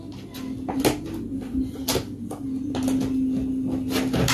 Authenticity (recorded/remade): recorded